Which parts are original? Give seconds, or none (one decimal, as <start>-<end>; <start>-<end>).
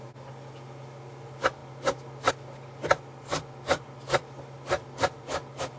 0.0-5.8